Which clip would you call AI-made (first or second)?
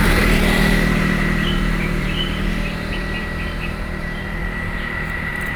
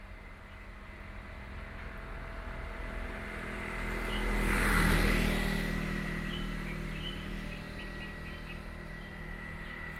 first